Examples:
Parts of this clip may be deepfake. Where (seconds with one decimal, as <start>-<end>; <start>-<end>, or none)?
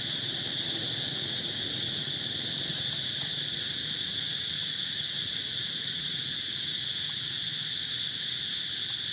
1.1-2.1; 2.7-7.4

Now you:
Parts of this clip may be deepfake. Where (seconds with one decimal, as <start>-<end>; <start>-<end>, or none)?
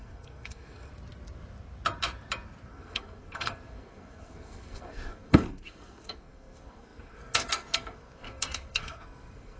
0.0-0.9; 2.7-9.6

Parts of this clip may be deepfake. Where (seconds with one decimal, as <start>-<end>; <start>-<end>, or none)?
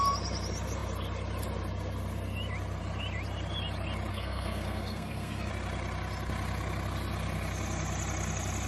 4.1-5.5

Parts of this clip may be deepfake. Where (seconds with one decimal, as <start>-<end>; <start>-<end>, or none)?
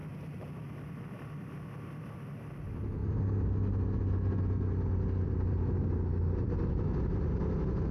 none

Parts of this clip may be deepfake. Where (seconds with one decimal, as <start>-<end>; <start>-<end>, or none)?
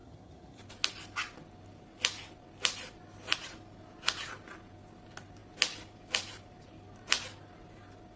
0.0-0.6